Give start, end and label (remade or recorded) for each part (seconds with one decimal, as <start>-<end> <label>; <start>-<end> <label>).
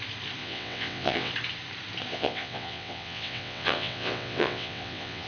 0.0-0.4 recorded; 0.4-1.3 remade; 1.3-2.1 recorded; 2.1-5.3 remade